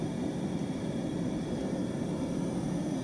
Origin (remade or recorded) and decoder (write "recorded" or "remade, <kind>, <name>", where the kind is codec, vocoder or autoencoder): recorded